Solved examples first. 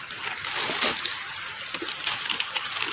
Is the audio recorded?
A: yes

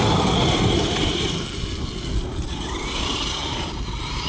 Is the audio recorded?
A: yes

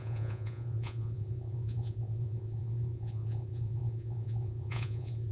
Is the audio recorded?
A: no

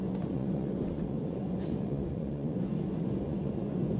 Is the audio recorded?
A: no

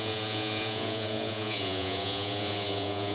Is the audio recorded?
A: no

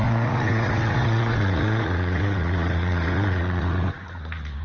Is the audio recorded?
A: no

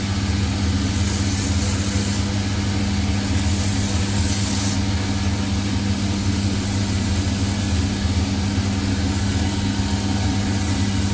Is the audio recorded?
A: yes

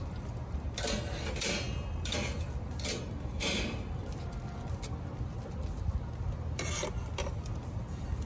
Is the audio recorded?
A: yes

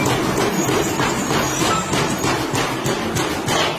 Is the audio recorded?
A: yes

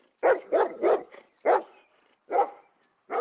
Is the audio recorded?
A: yes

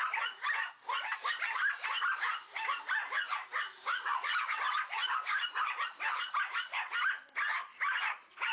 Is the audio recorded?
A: yes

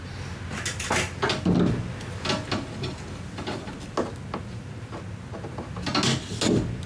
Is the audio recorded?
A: yes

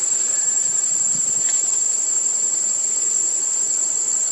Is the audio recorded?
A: yes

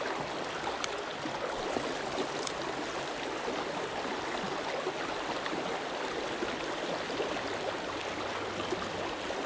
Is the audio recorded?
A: yes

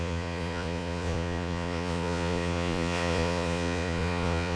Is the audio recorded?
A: no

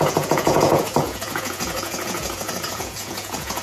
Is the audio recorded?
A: no